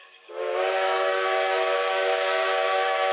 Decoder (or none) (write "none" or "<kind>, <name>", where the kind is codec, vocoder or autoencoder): codec, DAC